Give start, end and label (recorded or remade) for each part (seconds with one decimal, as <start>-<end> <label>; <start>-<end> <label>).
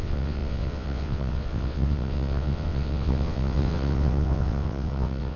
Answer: 0.0-5.4 remade